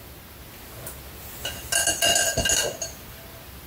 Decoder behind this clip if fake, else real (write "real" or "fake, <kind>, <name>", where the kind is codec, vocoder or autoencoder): real